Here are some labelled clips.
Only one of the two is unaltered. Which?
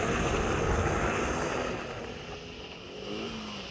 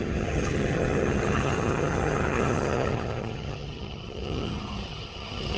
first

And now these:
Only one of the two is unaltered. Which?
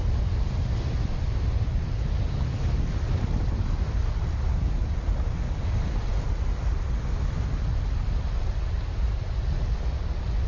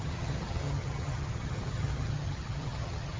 first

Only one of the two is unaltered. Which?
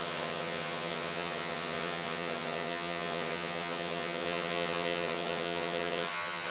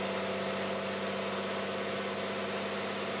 second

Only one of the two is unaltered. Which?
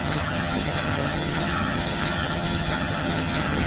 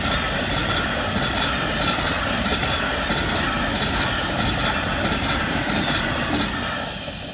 second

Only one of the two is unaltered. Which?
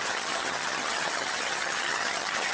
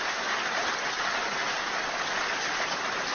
second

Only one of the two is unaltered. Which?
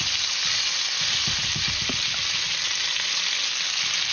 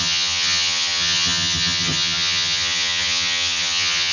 first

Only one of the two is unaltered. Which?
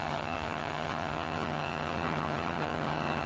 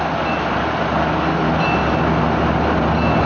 second